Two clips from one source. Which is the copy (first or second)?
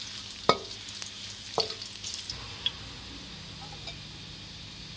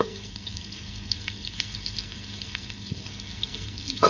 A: second